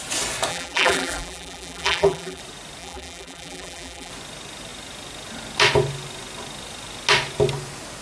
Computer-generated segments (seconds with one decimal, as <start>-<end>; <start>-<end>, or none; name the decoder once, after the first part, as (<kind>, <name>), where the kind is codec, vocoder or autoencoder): 0.5-2.4 (vocoder, BigVGAN v2); 2.8-4.1